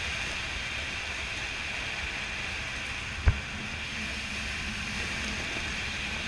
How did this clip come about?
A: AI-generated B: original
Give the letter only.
B